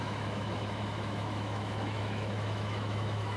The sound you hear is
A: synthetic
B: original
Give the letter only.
A